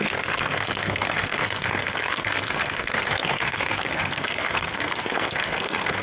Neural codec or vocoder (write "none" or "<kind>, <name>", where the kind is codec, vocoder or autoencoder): codec, SNAC